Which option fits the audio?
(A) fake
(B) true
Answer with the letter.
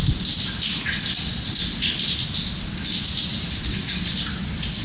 B